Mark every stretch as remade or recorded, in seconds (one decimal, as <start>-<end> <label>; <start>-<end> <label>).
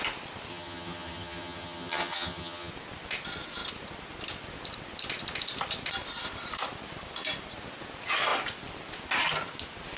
0.0-0.5 recorded; 0.5-2.7 remade; 2.7-10.0 recorded